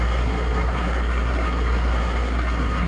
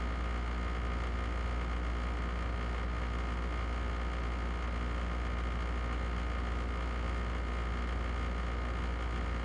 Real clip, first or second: second